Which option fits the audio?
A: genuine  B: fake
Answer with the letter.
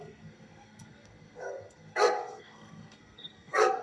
B